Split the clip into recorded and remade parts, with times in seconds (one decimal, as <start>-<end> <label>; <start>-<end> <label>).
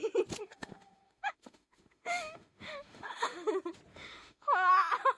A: 0.0-0.4 recorded; 0.4-3.5 remade; 3.5-3.9 recorded; 3.9-4.7 remade; 4.7-5.2 recorded